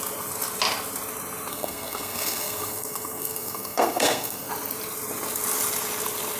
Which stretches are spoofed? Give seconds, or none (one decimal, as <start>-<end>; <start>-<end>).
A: 1.5-4.5